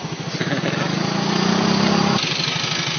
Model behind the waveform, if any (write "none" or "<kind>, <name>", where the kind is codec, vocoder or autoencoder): none